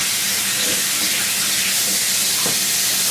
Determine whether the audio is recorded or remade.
recorded